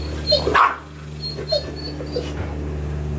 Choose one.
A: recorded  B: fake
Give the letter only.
A